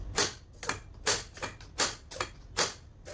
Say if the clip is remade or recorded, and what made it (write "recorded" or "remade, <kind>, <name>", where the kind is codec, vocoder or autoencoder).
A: recorded